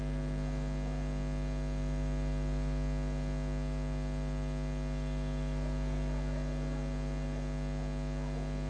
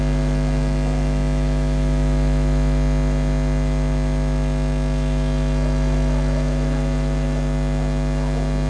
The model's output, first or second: second